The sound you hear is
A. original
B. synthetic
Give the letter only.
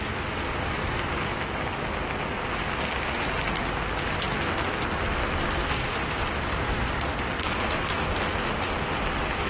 A